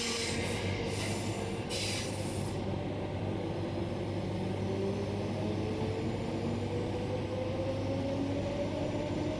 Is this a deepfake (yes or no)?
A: no